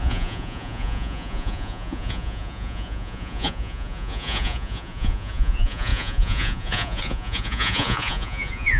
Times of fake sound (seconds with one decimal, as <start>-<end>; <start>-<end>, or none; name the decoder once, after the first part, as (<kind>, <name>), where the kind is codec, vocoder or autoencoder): 0.0-8.8 (vocoder, Vocos)